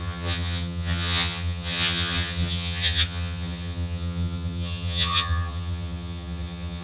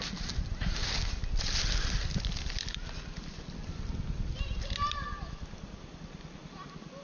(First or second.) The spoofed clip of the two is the first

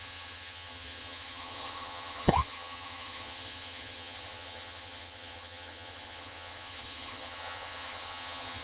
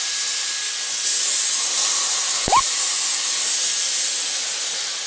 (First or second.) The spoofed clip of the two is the first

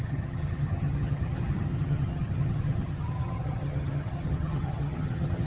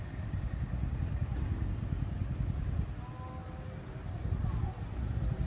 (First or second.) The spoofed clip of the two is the first